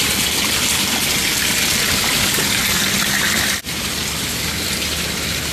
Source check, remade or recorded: recorded